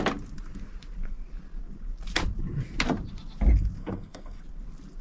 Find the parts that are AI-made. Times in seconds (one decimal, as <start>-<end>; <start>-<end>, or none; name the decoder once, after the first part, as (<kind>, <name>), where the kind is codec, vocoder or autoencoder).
3.8-4.4 (codec, SNAC)